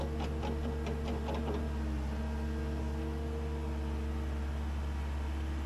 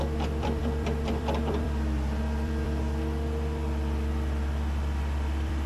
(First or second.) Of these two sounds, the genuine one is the first